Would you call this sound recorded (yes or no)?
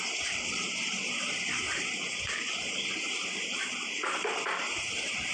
no